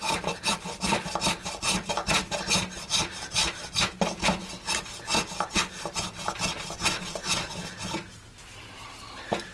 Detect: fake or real real